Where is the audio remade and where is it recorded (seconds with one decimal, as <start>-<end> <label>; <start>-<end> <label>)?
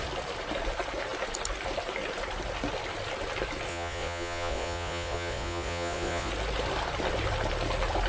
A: 0.0-3.7 recorded; 3.7-6.3 remade; 6.3-8.1 recorded